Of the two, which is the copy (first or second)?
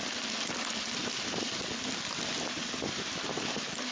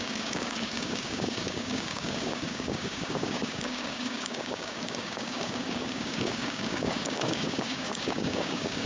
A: second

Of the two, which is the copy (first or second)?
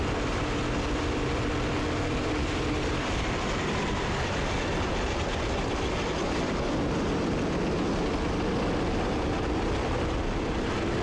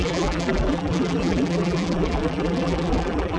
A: second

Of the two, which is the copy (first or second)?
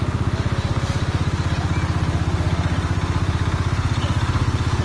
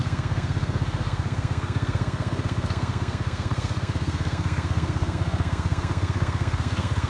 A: second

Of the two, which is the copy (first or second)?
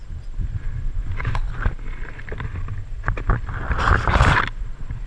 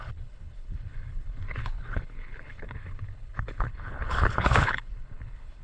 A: second